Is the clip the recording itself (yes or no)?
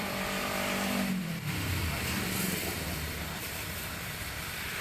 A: no